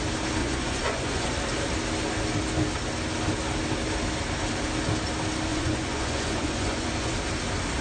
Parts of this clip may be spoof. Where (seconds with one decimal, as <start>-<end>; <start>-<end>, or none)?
0.4-1.3; 5.5-7.1